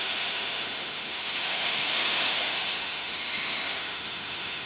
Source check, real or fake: fake